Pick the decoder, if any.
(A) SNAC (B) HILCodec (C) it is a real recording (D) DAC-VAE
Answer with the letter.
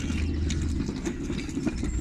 C